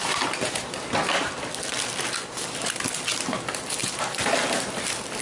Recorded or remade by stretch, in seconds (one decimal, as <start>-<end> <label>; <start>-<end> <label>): 0.0-5.2 recorded